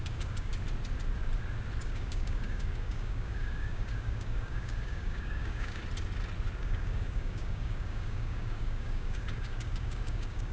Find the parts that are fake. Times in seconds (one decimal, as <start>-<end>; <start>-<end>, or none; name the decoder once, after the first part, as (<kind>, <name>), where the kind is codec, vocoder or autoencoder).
0.0-0.5 (codec, DAC); 1.8-5.8; 6.6-10.5